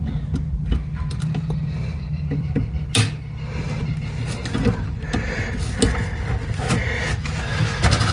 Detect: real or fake real